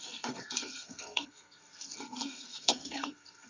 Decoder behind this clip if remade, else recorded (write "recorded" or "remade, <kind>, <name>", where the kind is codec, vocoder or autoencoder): remade, codec, SNAC